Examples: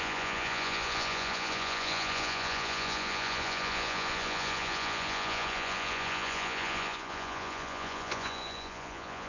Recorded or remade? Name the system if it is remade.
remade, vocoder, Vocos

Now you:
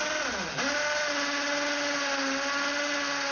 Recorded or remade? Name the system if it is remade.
recorded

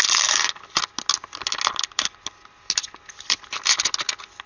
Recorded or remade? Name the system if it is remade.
recorded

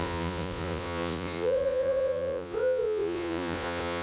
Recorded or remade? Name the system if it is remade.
remade, vocoder, Vocos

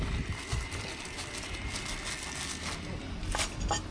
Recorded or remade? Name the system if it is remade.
recorded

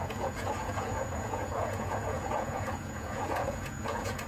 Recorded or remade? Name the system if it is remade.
remade, vocoder, Vocos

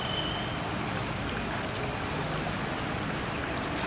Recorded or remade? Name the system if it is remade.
recorded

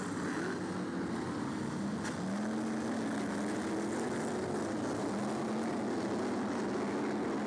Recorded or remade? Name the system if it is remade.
recorded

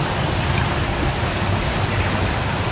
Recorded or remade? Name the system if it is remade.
recorded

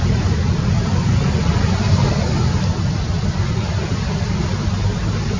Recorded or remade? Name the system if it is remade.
recorded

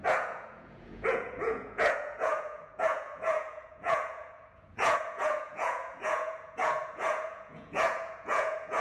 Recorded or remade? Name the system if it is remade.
remade, vocoder, Vocos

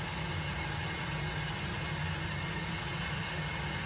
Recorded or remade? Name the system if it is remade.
recorded